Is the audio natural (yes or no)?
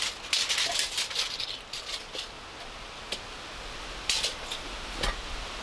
yes